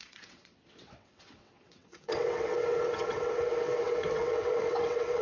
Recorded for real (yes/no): no